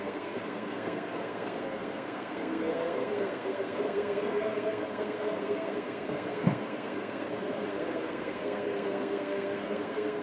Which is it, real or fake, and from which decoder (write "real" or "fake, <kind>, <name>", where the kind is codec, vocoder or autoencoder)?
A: fake, codec, SNAC